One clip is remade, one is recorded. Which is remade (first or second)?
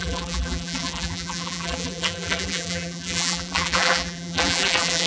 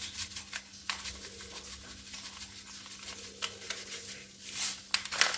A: first